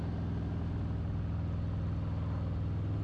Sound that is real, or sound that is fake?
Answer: real